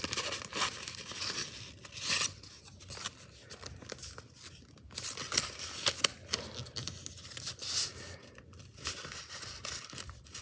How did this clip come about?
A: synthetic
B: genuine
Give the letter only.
B